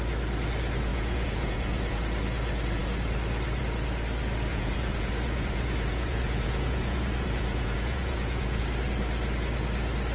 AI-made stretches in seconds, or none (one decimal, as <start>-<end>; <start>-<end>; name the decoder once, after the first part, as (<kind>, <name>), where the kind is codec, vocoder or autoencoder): 0.9-2.0 (vocoder, Vocos); 4.5-8.6